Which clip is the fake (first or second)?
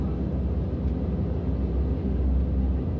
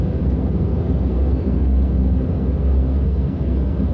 second